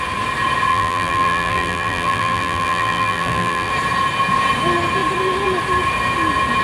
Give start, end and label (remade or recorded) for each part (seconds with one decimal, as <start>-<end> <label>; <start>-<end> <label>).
0.0-0.7 recorded; 0.7-3.7 remade; 3.7-6.6 recorded